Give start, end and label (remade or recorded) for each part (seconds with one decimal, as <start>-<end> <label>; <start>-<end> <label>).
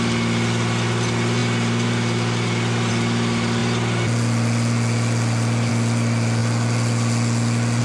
0.0-7.8 recorded